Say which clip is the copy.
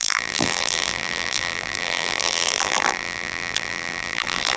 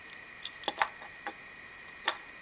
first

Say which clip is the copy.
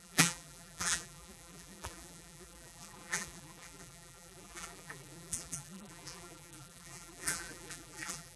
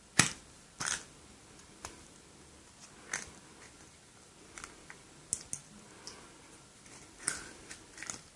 first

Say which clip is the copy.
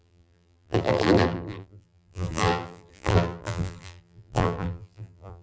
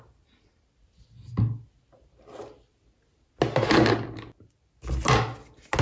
first